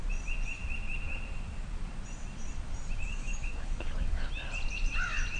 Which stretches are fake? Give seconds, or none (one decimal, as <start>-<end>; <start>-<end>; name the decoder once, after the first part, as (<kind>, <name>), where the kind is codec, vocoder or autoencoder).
3.1-4.3 (codec, DAC)